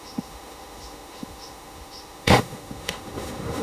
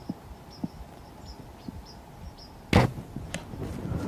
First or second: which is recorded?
second